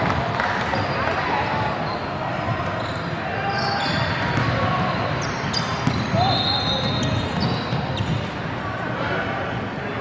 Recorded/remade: recorded